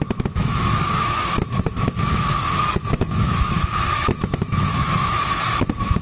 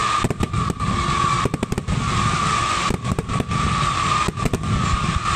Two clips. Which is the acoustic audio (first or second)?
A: second